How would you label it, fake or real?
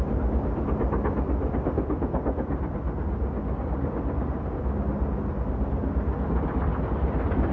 real